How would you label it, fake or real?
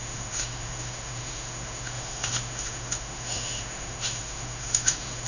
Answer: fake